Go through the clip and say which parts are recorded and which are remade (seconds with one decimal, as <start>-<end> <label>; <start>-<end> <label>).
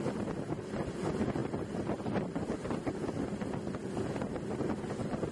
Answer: 0.0-1.4 recorded; 1.4-2.2 remade; 2.2-5.3 recorded